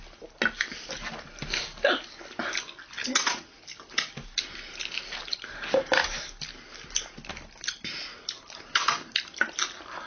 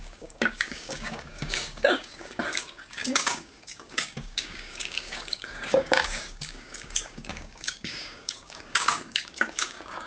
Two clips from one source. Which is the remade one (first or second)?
second